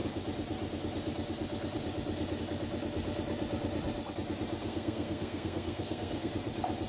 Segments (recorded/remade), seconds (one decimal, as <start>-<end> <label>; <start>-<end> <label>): 0.0-4.6 recorded; 4.6-6.3 remade; 6.3-6.9 recorded